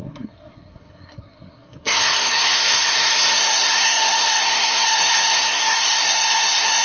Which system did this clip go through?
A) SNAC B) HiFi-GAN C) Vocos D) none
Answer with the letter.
A